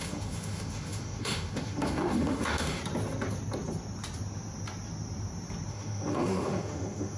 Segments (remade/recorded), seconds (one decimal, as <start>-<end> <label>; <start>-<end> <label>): 0.0-2.8 remade; 2.8-5.7 recorded; 5.7-7.2 remade